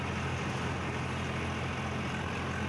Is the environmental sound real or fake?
real